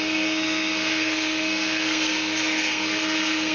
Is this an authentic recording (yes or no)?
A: no